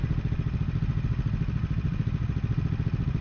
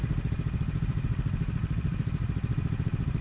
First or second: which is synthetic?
second